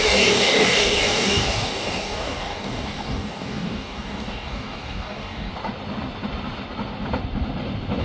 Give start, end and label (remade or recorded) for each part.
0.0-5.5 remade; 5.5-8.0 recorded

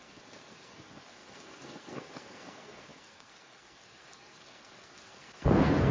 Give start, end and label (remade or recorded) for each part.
0.0-5.9 remade